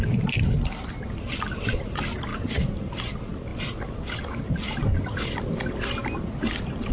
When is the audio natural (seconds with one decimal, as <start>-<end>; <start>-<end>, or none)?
0.0-6.9